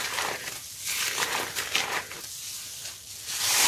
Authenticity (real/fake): real